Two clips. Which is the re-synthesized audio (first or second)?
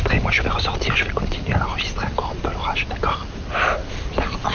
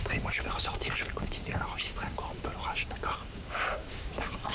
second